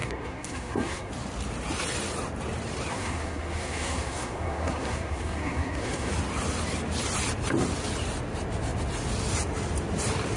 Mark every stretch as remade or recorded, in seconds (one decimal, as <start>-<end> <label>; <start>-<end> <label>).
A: 0.0-1.1 remade; 1.1-2.9 recorded; 2.9-6.1 remade; 6.1-10.4 recorded